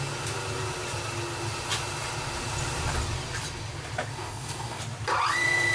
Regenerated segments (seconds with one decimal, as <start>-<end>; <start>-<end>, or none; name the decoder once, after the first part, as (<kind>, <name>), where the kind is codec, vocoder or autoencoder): 4.1-4.8 (codec, DAC)